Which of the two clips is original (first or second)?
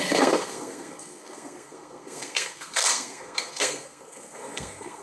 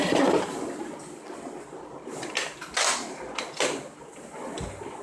second